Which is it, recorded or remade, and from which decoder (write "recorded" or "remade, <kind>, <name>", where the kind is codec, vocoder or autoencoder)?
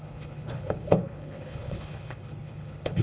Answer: remade, codec, HILCodec